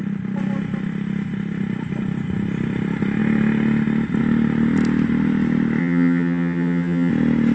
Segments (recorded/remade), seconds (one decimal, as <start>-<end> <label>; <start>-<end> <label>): 0.0-5.8 recorded; 5.8-7.1 remade; 7.1-7.5 recorded